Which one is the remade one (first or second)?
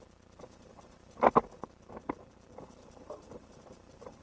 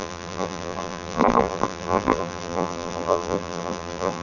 second